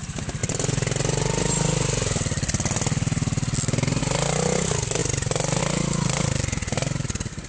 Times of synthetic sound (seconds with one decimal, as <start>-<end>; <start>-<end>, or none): none

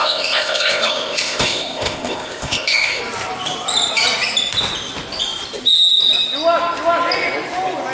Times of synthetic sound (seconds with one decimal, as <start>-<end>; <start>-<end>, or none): 0.0-3.0

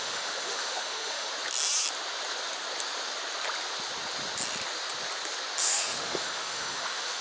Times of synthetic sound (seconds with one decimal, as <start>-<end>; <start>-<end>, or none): 0.0-1.3; 5.6-7.2

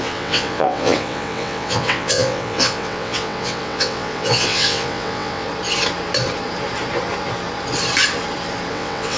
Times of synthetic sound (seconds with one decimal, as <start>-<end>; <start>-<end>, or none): 0.0-5.5; 8.7-9.2